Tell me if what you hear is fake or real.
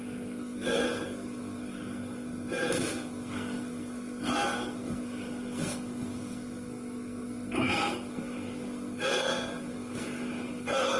fake